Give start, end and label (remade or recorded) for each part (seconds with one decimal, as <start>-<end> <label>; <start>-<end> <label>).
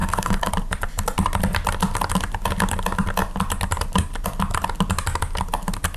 0.0-0.5 remade; 0.5-6.0 recorded